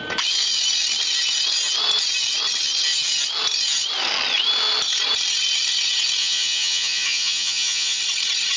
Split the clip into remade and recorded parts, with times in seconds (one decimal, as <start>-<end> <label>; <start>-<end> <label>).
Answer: 0.0-6.2 recorded; 6.2-8.0 remade; 8.0-8.6 recorded